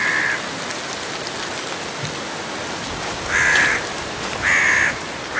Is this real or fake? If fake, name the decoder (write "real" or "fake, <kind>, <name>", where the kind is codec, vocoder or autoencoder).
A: real